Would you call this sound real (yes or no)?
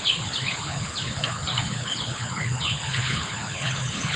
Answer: no